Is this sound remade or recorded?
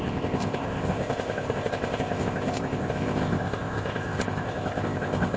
remade